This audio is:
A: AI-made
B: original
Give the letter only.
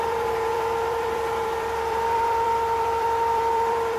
A